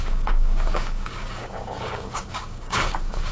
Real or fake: fake